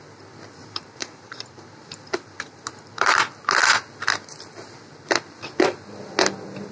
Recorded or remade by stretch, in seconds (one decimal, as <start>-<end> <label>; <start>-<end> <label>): 0.0-0.6 recorded; 0.6-3.2 remade; 3.2-6.7 recorded